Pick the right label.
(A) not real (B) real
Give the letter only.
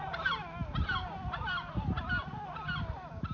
B